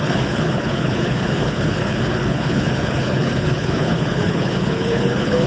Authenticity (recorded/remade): remade